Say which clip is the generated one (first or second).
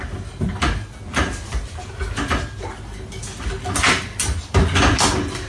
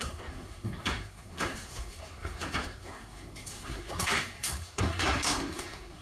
second